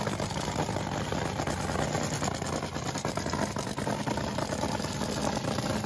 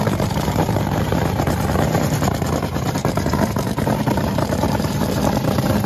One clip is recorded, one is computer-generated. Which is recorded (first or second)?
first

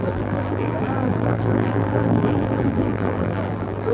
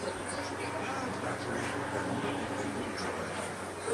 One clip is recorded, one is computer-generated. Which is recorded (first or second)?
second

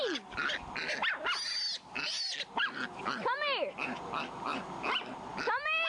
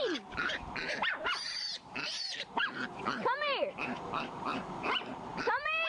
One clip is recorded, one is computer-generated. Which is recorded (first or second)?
first